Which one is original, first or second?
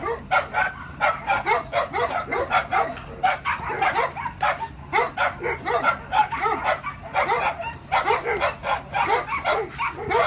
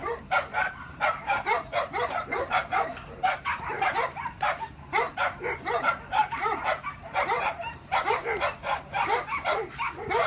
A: first